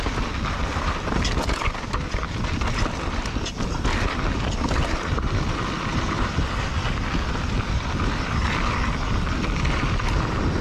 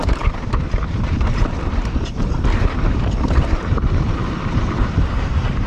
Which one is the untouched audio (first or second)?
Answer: first